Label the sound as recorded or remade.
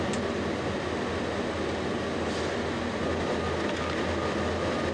recorded